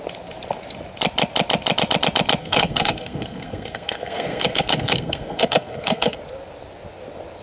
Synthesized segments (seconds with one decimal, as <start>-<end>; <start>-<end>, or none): 2.4-6.2